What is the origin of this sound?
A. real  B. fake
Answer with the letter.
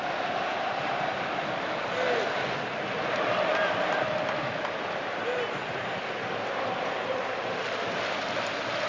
A